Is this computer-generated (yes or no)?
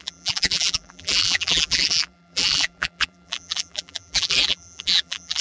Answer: yes